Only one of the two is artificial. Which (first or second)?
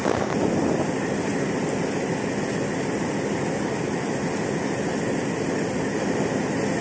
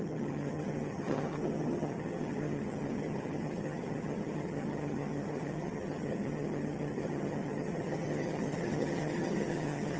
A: second